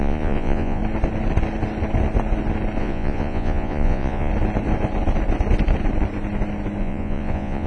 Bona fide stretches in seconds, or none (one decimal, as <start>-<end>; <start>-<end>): 0.8-2.8; 4.3-6.8